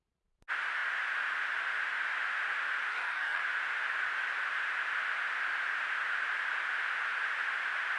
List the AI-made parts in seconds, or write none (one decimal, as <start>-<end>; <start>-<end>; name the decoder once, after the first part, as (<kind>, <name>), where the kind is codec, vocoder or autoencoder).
2.9-3.4 (codec, DAC)